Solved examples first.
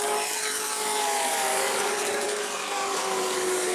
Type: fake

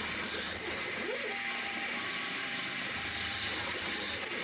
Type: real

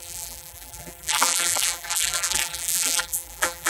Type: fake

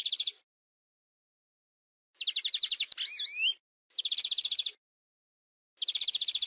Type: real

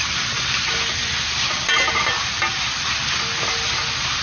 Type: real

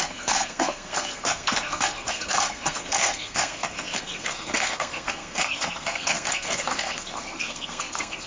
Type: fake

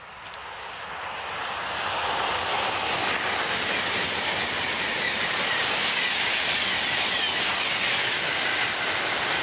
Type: real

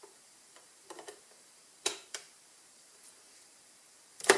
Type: fake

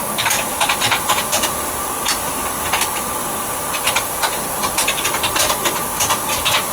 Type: real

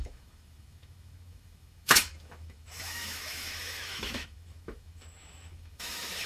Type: fake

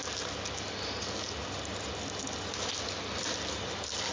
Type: real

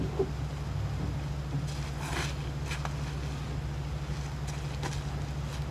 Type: real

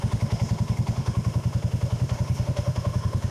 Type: fake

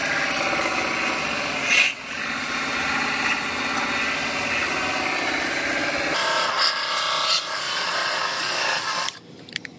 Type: real